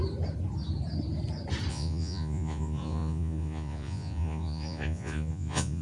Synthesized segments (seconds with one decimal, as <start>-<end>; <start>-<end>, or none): 1.7-5.8